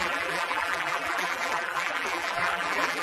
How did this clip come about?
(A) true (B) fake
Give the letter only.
B